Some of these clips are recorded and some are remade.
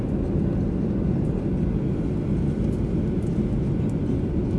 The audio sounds recorded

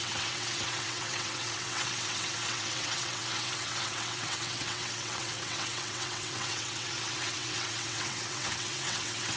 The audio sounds remade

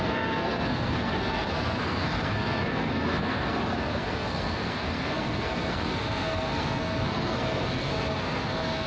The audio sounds remade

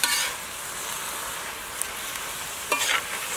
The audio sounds recorded